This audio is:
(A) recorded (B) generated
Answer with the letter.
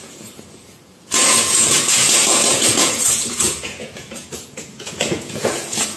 B